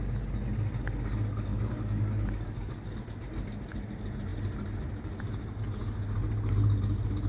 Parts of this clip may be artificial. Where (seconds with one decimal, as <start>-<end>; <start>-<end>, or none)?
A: 1.5-2.9